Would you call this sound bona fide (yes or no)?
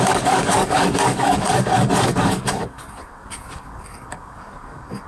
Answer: no